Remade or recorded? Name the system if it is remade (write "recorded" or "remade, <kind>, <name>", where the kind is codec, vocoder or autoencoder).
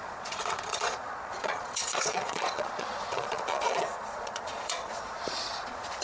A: remade, vocoder, Vocos